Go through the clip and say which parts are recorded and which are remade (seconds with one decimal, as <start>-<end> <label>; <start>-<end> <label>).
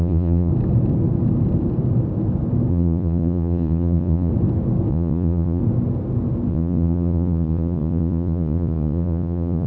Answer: 0.0-0.5 remade; 0.5-2.7 recorded; 2.7-4.3 remade; 4.3-4.9 recorded; 4.9-5.6 remade; 5.6-6.5 recorded; 6.5-9.7 remade